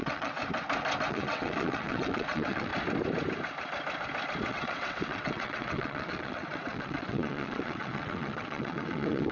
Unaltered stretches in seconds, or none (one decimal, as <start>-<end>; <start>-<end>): 0.4-1.1; 2.7-4.5